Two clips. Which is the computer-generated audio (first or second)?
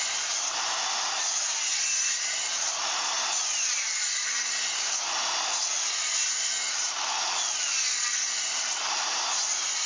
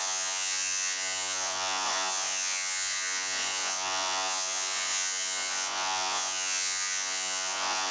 second